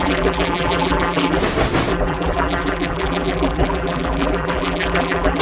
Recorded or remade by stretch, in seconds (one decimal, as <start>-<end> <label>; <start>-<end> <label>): 0.0-1.4 remade; 1.4-1.9 recorded; 1.9-5.4 remade